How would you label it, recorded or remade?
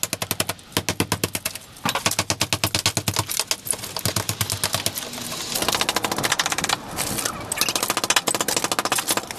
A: recorded